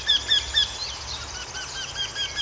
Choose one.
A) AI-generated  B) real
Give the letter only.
B